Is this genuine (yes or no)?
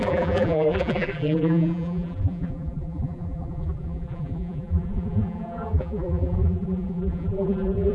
no